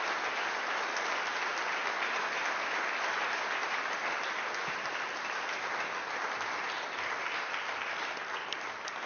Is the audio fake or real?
real